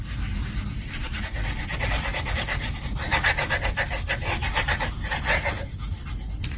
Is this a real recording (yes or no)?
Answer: yes